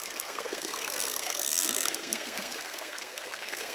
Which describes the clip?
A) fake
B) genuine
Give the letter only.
A